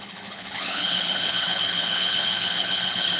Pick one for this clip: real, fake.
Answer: fake